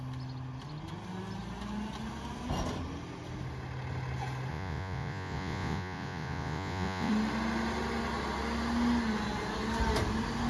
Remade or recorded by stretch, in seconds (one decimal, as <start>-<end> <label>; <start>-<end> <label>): 0.0-4.5 recorded; 4.5-7.1 remade; 7.1-10.5 recorded

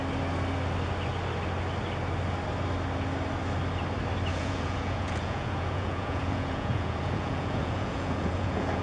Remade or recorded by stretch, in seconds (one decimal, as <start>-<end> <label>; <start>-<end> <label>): 0.0-4.3 recorded; 4.3-8.8 remade

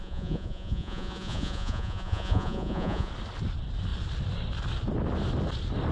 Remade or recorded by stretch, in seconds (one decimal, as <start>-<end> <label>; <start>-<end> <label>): 0.0-3.1 remade; 3.1-5.9 recorded

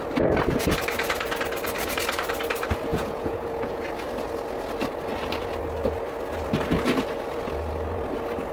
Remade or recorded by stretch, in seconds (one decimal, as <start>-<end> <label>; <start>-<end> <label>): 0.0-2.9 recorded; 2.9-3.8 remade; 3.8-8.5 recorded

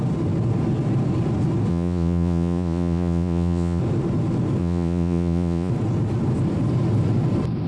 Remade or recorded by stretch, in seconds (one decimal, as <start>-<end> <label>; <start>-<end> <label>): 0.0-1.7 recorded; 1.7-3.8 remade; 3.8-4.6 recorded; 4.6-5.7 remade; 5.7-7.7 recorded

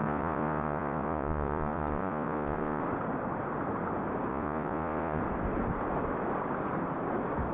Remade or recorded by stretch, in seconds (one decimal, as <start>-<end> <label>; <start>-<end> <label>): 0.0-2.8 remade; 2.8-4.3 recorded; 4.3-5.2 remade; 5.2-7.5 recorded

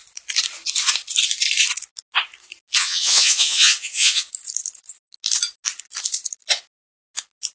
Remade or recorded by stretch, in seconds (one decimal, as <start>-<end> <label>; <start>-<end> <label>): 0.0-2.8 recorded; 2.8-4.3 remade; 4.3-7.5 recorded

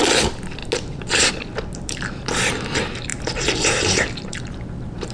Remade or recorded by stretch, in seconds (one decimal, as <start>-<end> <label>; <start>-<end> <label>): 0.0-5.1 recorded